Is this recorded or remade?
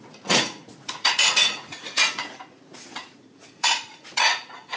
remade